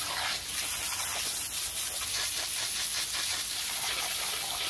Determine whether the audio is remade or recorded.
recorded